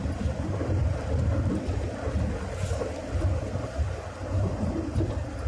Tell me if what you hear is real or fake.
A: real